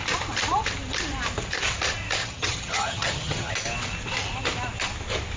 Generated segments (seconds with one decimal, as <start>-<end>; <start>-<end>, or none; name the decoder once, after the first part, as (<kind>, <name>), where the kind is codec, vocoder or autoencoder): 2.2-3.5 (vocoder, HiFi-GAN)

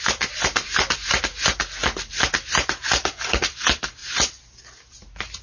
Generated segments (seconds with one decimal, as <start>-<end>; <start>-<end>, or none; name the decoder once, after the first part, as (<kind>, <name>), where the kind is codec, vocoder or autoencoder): none